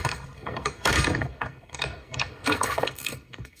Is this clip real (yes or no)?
no